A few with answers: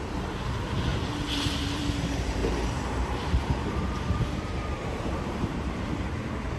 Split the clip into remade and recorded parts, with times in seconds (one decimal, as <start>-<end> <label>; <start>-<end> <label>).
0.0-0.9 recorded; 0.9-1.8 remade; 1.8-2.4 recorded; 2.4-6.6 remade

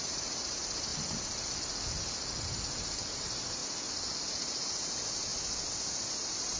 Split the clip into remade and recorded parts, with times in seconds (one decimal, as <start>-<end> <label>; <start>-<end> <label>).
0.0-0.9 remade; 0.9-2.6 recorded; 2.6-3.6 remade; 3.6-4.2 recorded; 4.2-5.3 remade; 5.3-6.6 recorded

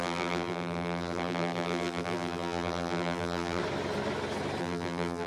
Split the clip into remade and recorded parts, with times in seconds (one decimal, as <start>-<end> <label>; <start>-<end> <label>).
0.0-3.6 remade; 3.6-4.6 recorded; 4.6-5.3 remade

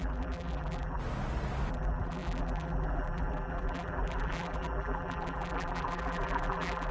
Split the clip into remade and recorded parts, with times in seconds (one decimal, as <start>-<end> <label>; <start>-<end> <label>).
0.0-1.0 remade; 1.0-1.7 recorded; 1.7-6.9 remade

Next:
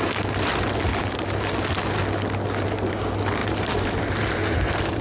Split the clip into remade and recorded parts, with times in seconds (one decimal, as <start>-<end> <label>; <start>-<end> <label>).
0.0-0.9 recorded; 0.9-1.5 remade; 1.5-3.4 recorded; 3.4-5.0 remade